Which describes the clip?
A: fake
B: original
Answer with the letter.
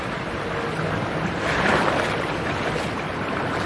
B